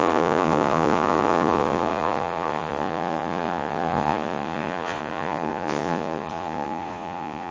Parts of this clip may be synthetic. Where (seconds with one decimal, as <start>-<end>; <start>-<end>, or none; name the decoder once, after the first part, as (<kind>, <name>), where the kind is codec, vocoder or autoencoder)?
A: 0.0-7.5 (vocoder, Vocos)